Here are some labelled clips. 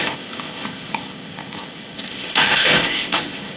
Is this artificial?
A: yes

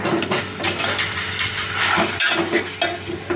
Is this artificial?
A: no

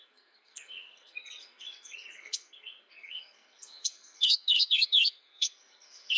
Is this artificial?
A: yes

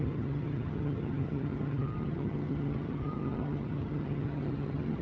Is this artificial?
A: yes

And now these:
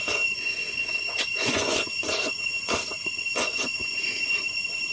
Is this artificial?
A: yes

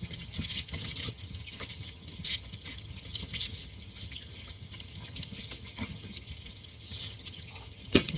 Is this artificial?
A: yes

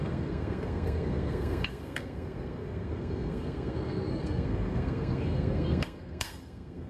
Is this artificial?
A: yes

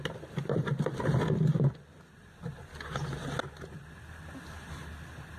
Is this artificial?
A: no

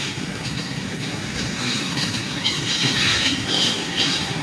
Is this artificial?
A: yes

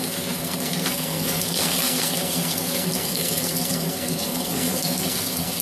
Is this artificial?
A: yes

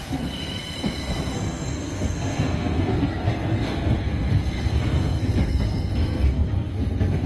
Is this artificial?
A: yes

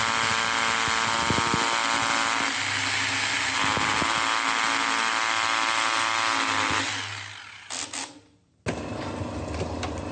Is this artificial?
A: no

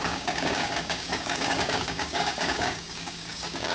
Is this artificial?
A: yes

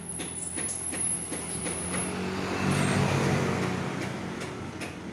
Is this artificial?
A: no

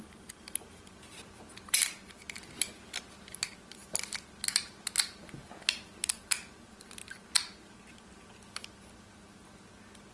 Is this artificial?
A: no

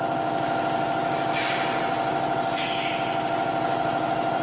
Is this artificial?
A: no